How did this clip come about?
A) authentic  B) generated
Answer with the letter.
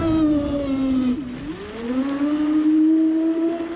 A